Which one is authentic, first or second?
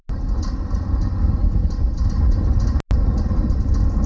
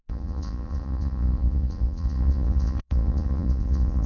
first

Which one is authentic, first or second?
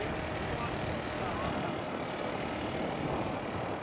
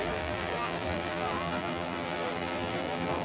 first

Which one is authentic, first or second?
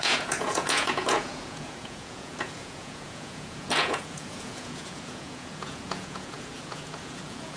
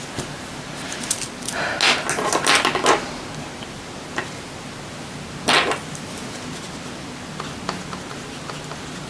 second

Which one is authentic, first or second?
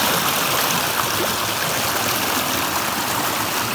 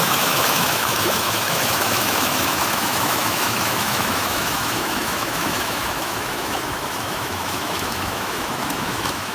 first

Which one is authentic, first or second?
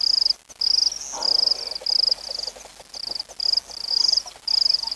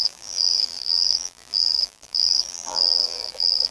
first